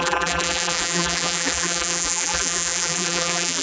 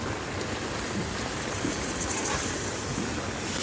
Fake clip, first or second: first